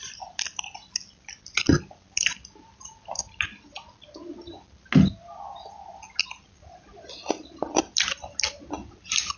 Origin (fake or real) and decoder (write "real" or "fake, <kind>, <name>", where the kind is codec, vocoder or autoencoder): real